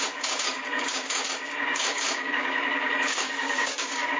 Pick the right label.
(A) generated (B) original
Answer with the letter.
A